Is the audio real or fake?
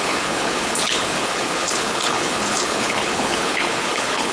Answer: fake